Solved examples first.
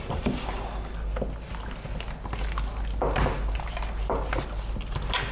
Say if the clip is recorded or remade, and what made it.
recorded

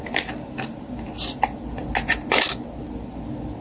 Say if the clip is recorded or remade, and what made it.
recorded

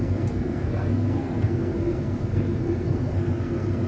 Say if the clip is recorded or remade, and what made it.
remade, codec, SNAC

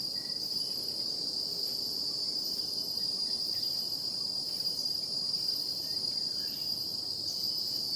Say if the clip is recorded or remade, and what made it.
recorded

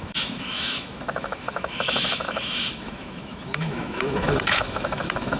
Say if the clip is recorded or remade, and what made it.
remade, autoencoder, DAC-VAE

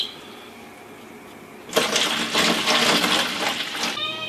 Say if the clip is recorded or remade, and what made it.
recorded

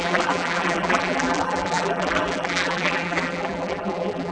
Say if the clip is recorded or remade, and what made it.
remade, vocoder, BigVGAN v2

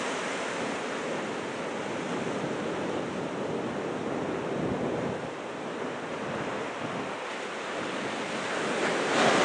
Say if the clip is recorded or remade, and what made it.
recorded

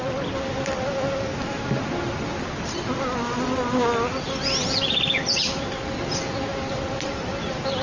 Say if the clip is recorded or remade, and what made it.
recorded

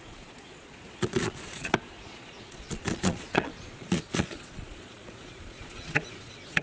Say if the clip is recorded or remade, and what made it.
remade, vocoder, Vocos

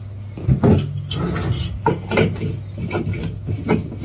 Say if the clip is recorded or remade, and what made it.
recorded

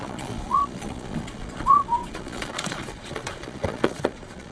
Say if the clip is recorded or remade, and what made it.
remade, vocoder, Vocos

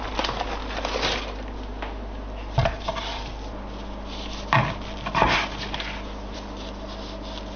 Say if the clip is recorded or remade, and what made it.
recorded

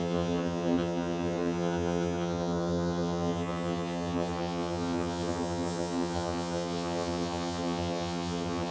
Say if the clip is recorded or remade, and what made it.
remade, vocoder, HiFi-GAN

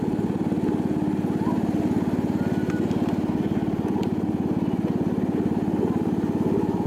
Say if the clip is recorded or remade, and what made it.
recorded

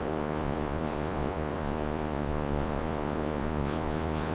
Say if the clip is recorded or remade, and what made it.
remade, vocoder, Vocos